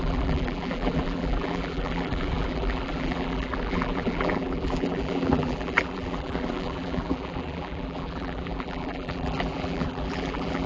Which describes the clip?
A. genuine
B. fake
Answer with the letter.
B